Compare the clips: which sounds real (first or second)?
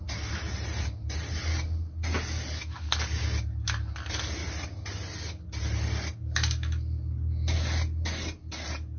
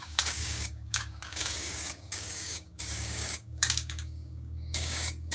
first